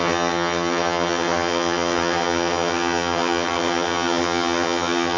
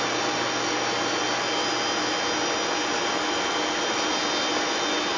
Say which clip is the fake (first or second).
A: first